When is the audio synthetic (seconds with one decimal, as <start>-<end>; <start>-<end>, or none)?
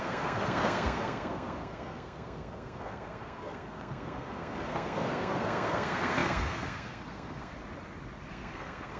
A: 0.0-7.5; 8.3-9.0